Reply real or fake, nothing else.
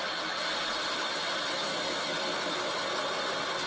real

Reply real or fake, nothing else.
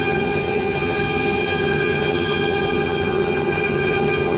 fake